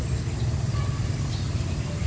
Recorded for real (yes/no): yes